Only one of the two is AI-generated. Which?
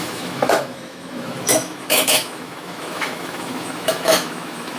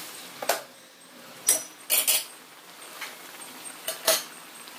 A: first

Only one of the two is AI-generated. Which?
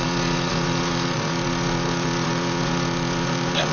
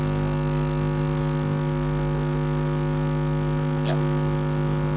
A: first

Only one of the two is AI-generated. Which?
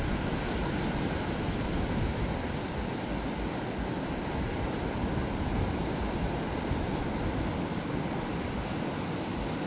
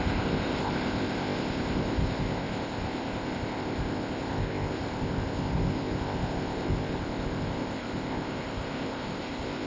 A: second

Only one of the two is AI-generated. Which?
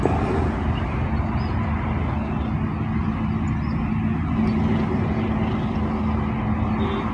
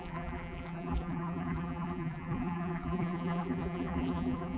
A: second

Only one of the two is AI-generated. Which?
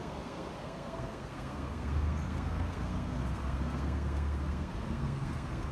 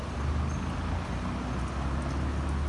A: first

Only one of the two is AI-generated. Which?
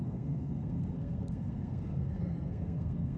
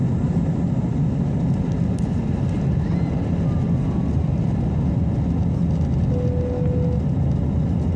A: first